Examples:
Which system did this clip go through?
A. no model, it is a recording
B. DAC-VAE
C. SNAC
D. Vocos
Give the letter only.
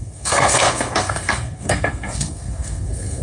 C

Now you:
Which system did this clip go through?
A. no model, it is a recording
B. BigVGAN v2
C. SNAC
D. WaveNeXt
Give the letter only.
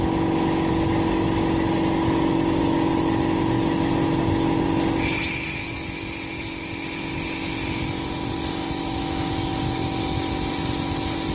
A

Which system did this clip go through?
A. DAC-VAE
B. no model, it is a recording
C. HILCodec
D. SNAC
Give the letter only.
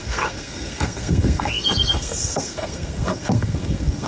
D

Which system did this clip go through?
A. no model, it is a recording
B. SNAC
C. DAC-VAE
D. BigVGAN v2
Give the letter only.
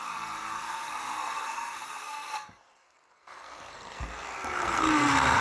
B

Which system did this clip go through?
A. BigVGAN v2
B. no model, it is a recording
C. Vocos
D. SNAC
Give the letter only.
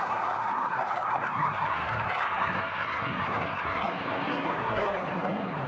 D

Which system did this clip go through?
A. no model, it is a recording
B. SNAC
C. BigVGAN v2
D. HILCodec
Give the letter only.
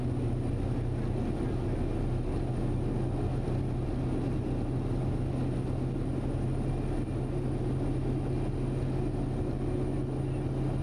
A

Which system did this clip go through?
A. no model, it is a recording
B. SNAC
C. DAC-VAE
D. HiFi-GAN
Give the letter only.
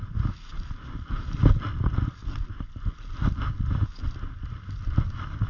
A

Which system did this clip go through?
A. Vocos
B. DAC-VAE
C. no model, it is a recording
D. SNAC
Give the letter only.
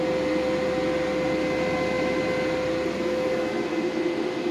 C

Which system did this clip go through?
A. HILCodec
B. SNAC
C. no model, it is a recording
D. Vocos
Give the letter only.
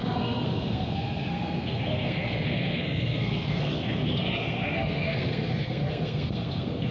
B